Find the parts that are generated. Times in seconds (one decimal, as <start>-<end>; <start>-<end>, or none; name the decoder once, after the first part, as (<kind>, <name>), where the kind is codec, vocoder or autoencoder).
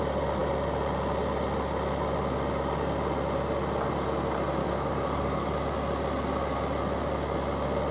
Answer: 4.6-5.5 (codec, DAC)